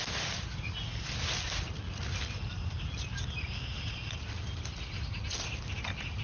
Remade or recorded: recorded